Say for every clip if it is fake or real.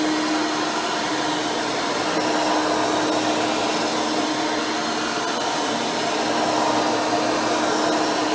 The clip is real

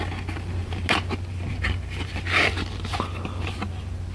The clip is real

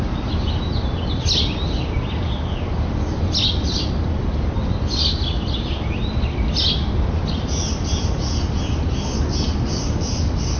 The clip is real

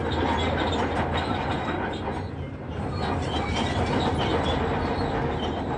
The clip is real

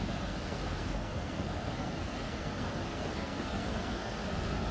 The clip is fake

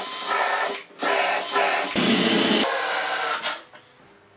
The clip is real